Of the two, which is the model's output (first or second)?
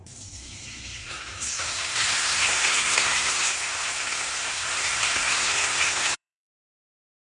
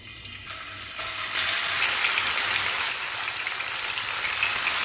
first